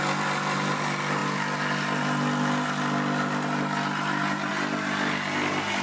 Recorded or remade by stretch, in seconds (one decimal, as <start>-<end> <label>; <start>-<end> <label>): 0.0-5.8 recorded